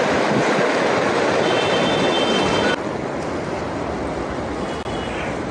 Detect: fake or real real